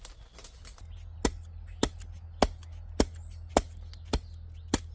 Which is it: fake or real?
real